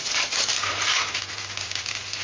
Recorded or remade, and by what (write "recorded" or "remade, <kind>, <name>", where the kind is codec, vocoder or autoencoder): recorded